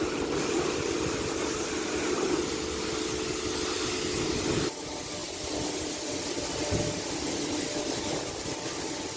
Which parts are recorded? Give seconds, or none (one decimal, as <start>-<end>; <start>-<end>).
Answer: 0.0-9.2